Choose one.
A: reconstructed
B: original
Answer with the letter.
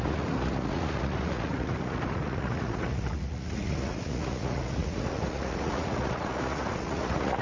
A